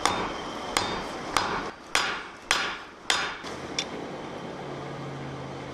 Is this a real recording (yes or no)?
yes